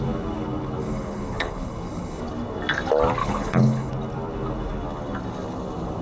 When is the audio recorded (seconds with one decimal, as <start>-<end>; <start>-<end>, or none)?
0.0-0.8; 2.2-3.2; 3.9-6.0